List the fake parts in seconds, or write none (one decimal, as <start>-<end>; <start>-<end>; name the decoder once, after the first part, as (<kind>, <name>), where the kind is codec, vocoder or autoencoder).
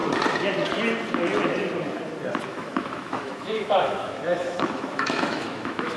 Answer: 2.5-6.0 (autoencoder, DAC-VAE)